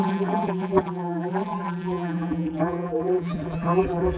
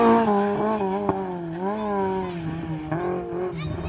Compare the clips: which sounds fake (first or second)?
first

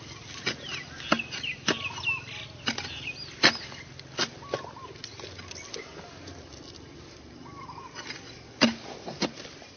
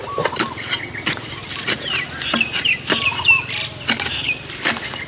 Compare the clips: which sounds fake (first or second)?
second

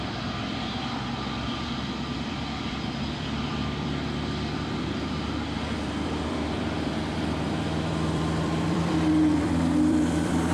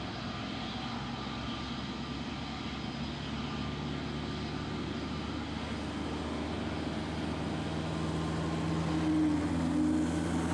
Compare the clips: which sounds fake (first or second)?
first